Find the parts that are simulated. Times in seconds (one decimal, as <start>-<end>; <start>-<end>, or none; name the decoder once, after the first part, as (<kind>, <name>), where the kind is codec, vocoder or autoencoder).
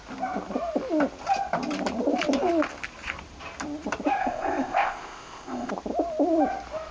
4.2-5.7 (codec, ZipCodec)